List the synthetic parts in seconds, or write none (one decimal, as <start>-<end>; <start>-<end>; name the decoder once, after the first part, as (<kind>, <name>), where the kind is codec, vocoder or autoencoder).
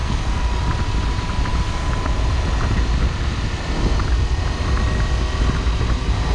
0.0-0.6 (codec, SNAC)